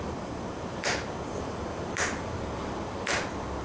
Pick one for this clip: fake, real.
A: fake